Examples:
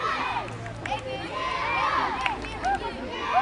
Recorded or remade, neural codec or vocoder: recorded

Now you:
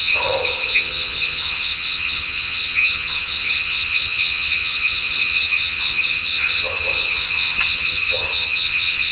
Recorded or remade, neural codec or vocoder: remade, vocoder, HiFi-GAN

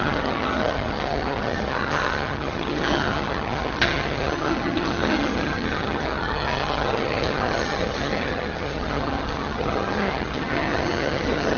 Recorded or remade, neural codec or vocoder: remade, vocoder, HiFi-GAN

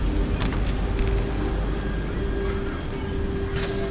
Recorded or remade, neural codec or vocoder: recorded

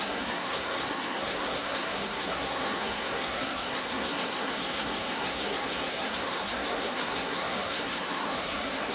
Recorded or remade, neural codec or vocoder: remade, codec, SNAC